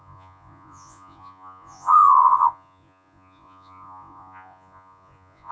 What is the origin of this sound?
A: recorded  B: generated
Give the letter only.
B